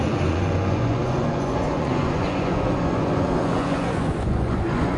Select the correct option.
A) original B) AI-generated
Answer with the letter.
B